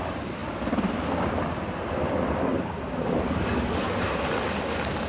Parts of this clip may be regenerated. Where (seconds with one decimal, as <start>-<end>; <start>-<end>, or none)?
2.5-3.4